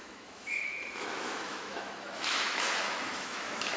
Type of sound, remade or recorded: remade